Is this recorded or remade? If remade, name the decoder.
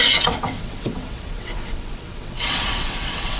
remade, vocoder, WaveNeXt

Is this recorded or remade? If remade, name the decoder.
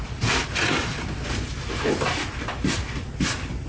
recorded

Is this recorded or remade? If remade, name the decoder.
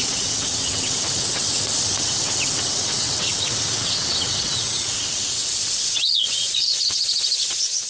remade, vocoder, WaveNeXt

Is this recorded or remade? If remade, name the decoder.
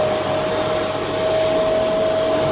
recorded